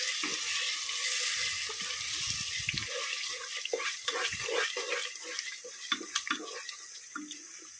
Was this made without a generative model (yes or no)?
yes